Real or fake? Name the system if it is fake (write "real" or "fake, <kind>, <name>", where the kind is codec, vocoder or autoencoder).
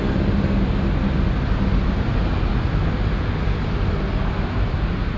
real